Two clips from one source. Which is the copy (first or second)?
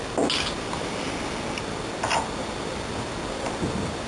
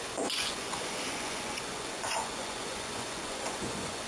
second